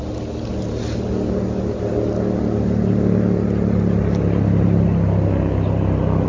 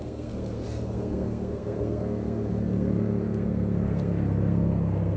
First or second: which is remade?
second